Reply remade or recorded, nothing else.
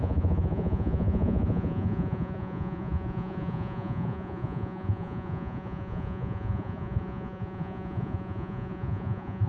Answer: remade